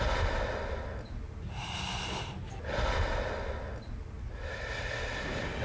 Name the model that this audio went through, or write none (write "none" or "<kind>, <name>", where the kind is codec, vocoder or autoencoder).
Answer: none